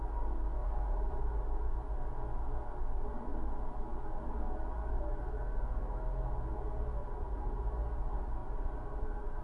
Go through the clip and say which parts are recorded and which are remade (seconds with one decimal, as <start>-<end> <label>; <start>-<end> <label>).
0.0-0.6 recorded; 0.6-1.3 remade; 1.3-7.0 recorded; 7.0-7.6 remade; 7.6-8.4 recorded; 8.4-9.4 remade